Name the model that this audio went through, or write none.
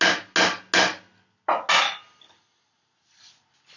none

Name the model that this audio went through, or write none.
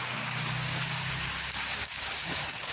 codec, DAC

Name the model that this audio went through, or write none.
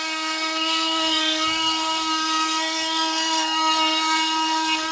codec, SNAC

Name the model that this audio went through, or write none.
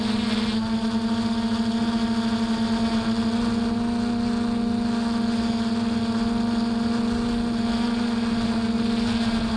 none